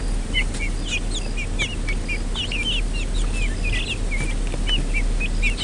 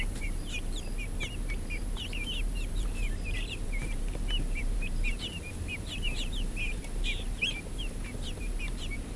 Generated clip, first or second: second